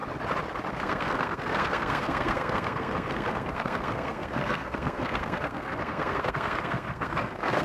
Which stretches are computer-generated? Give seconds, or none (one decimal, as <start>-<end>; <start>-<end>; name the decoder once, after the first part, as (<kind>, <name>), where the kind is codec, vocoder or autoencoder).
0.7-7.6 (codec, SNAC)